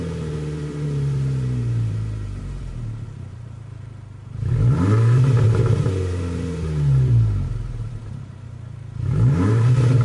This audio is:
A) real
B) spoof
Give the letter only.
B